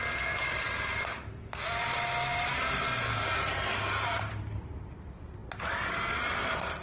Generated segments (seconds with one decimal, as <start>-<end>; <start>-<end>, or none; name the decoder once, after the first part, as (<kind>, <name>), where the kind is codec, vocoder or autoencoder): none